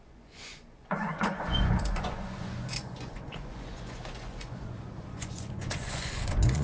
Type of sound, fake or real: fake